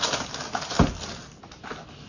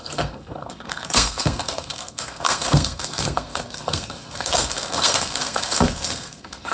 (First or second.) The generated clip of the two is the second